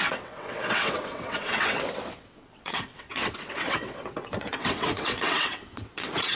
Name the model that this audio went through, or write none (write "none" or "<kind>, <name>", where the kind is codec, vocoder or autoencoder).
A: vocoder, WaveNeXt